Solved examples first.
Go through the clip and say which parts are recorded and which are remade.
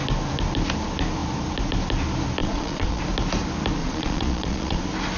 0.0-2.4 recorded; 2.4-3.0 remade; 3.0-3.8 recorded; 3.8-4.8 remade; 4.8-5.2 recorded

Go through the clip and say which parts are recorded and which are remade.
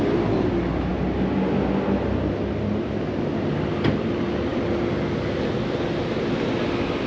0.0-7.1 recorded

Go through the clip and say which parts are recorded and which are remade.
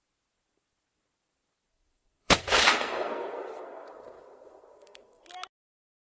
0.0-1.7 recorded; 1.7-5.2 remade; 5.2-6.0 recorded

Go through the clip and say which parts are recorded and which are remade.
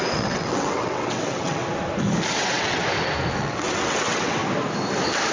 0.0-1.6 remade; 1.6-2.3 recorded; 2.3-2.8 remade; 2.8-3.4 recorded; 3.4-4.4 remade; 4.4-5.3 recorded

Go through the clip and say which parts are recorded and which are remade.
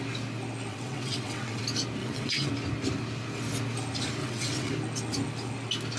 0.0-0.7 recorded; 0.7-1.6 remade; 1.6-2.0 recorded; 2.0-2.5 remade; 2.5-4.2 recorded; 4.2-4.7 remade; 4.7-6.0 recorded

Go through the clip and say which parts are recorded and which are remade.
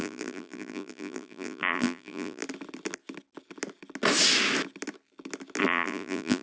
0.0-2.4 remade; 2.4-5.6 recorded; 5.6-6.4 remade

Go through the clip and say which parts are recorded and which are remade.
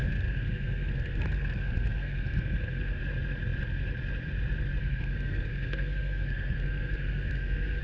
0.0-3.0 remade; 3.0-4.8 recorded; 4.8-7.8 remade